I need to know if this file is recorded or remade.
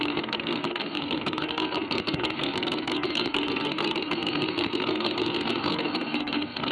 remade